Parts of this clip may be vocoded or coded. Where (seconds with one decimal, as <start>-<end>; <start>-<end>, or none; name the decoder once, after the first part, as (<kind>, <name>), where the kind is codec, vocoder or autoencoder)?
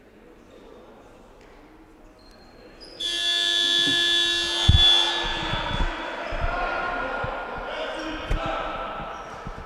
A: none